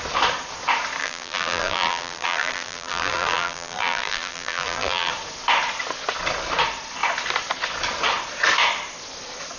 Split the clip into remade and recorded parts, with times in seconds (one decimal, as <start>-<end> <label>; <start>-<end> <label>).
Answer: 0.0-1.0 recorded; 1.0-5.1 remade; 5.1-9.6 recorded